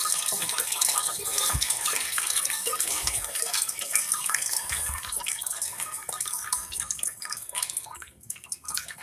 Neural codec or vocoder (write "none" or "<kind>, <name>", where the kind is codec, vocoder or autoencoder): codec, SNAC